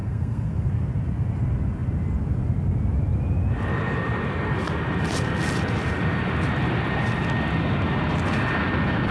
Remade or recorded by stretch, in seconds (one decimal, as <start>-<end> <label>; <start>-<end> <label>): 0.0-0.7 remade; 0.7-9.1 recorded